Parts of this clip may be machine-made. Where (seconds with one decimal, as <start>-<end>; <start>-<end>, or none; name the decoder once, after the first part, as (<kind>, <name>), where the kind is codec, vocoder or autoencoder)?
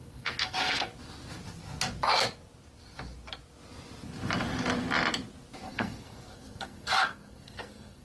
0.0-0.9 (codec, SNAC); 5.6-8.0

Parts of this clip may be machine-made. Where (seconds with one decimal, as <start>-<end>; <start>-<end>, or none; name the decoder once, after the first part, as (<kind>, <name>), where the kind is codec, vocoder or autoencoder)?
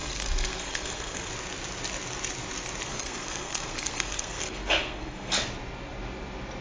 0.0-1.3 (codec, SNAC); 2.9-5.4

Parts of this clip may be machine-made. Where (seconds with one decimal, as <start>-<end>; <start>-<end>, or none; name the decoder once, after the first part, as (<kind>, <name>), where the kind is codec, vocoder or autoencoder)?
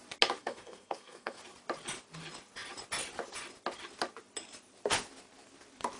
0.4-1.4 (codec, SNAC)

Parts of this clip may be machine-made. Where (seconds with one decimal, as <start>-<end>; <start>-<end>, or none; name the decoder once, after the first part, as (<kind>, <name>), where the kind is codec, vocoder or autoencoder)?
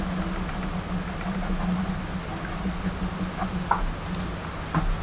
none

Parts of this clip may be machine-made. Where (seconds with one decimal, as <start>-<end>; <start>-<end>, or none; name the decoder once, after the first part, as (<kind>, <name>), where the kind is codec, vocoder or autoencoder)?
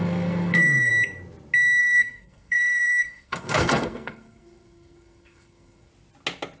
0.0-0.9 (codec, SNAC); 1.8-5.9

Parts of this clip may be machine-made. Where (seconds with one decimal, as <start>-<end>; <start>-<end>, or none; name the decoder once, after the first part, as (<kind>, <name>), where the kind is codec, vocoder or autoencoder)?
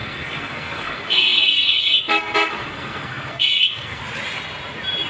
0.0-4.0 (codec, SNAC)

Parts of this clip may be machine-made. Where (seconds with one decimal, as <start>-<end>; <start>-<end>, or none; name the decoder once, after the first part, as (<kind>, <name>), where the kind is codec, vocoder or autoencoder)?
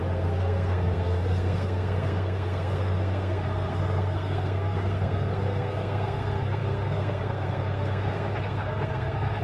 0.0-9.4 (codec, SNAC)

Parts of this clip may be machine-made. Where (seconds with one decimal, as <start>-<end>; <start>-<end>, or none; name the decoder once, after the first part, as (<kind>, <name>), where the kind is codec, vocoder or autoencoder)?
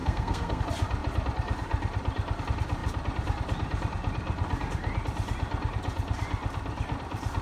0.0-0.6 (codec, SNAC)